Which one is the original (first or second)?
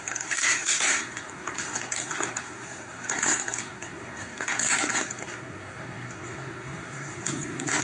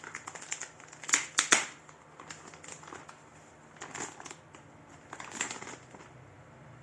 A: second